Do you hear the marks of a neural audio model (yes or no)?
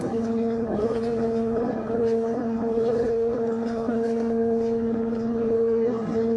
yes